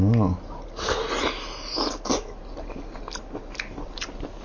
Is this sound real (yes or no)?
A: yes